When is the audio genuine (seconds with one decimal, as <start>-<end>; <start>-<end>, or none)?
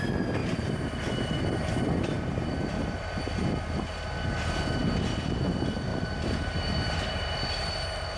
0.0-0.4; 3.5-5.9; 7.2-8.2